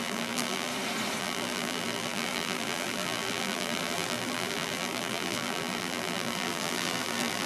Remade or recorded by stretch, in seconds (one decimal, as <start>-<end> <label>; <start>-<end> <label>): 0.0-0.7 remade; 0.7-1.2 recorded; 1.2-7.5 remade